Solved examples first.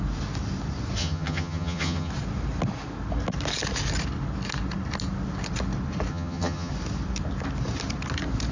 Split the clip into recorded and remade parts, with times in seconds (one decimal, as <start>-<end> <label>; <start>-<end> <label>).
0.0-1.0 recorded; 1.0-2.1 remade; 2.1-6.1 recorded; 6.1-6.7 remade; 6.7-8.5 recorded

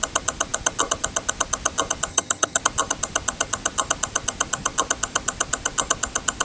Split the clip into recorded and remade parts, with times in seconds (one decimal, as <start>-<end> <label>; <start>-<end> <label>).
0.0-2.1 recorded; 2.1-2.6 remade; 2.6-6.4 recorded

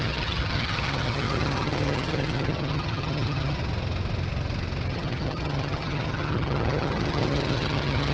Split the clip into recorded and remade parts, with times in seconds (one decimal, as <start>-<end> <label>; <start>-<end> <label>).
0.0-3.6 remade; 3.6-4.9 recorded; 4.9-8.1 remade